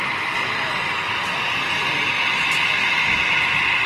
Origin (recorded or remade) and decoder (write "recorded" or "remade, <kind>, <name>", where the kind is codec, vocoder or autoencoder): recorded